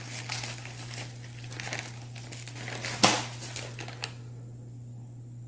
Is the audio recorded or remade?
recorded